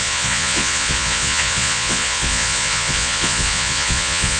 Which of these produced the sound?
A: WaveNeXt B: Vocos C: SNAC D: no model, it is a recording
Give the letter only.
B